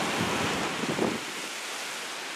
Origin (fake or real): real